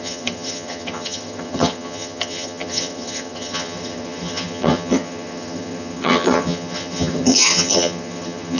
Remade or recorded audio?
remade